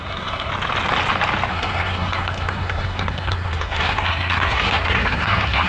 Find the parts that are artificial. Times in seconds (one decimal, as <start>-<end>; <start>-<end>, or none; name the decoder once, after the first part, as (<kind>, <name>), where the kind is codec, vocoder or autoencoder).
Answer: 0.0-0.5 (codec, SNAC); 1.5-5.7